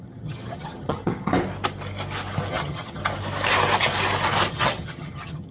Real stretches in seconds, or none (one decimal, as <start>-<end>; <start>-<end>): 1.3-2.5; 3.0-4.5